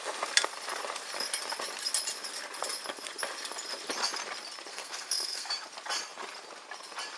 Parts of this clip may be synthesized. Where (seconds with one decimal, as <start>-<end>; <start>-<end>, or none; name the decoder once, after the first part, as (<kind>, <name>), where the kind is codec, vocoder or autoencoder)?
4.7-5.5 (codec, SNAC)